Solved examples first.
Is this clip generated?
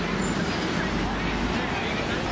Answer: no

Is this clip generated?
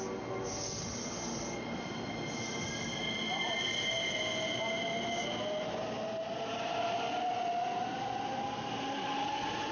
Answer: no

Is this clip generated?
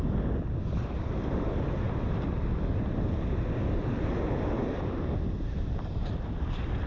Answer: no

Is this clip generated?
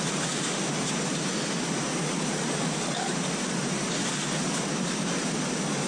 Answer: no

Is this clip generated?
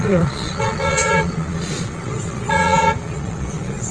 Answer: yes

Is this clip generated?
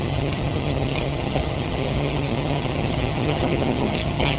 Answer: yes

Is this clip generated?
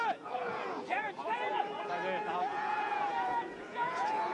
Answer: yes